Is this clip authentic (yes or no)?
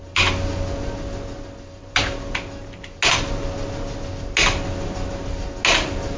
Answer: yes